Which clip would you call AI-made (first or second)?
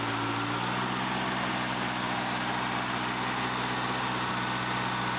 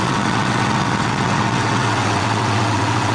second